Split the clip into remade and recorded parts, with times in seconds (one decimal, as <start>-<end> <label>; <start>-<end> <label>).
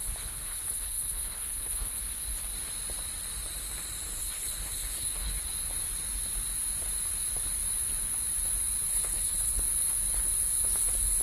0.0-2.0 remade; 2.0-4.2 recorded; 4.2-5.4 remade; 5.4-8.9 recorded; 8.9-9.6 remade; 9.6-11.2 recorded